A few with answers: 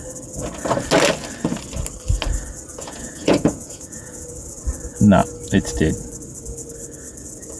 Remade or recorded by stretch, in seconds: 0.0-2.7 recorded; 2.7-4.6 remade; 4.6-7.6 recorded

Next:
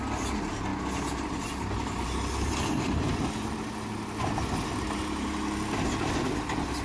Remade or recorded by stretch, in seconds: 0.0-6.8 recorded

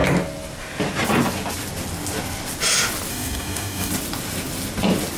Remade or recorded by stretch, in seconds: 0.0-3.1 recorded; 3.1-3.9 remade; 3.9-5.2 recorded